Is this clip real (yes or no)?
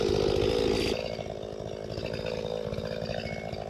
yes